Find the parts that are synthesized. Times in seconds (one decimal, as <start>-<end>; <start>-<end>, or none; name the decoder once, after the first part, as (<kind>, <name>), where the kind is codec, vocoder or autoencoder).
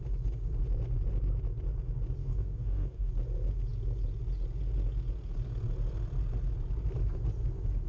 2.2-3.1 (codec, DAC)